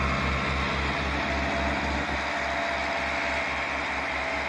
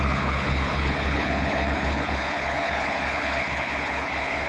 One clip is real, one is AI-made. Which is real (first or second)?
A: first